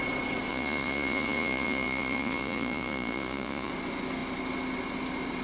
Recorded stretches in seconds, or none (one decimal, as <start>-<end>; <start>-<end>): 0.0-0.5; 3.7-5.4